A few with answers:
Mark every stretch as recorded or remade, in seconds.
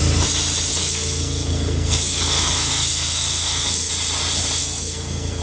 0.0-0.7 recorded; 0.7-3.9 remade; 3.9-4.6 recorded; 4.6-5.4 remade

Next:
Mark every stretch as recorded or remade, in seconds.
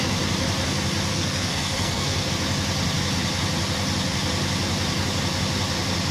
0.0-1.1 recorded; 1.1-2.3 remade; 2.3-6.1 recorded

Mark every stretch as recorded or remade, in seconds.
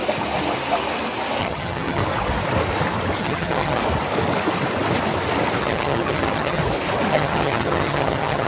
0.0-1.4 recorded; 1.4-2.0 remade; 2.0-3.2 recorded; 3.2-3.8 remade; 3.8-5.6 recorded; 5.6-6.6 remade; 6.6-7.1 recorded; 7.1-8.5 remade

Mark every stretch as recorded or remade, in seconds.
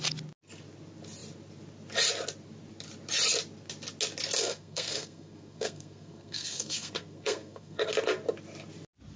0.0-4.4 recorded; 4.4-7.9 remade; 7.9-9.2 recorded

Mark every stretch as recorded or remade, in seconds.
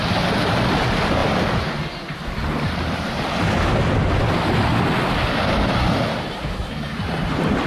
0.0-6.9 recorded; 6.9-7.7 remade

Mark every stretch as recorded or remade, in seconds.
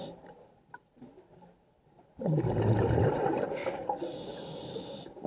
0.0-5.3 recorded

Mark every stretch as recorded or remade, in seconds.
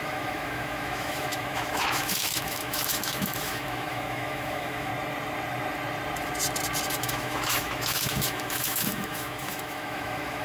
0.0-4.9 remade; 4.9-7.0 recorded; 7.0-10.4 remade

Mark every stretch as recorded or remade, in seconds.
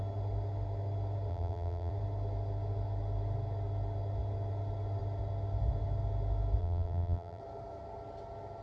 0.0-1.3 recorded; 1.3-1.9 remade; 1.9-6.6 recorded; 6.6-7.4 remade; 7.4-8.6 recorded